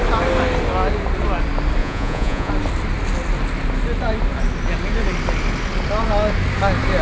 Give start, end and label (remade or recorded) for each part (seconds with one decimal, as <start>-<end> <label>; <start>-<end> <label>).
0.0-1.8 recorded; 1.8-2.5 remade; 2.5-7.0 recorded